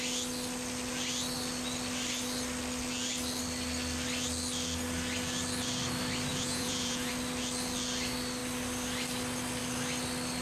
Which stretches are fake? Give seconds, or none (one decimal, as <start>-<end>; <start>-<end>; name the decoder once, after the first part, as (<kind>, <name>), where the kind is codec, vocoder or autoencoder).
6.3-7.1 (vocoder, Vocos)